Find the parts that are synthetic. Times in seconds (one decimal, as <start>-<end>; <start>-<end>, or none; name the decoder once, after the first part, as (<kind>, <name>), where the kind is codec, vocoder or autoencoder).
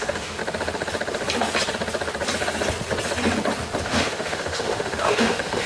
0.0-0.4 (autoencoder, DAC-VAE); 3.8-5.7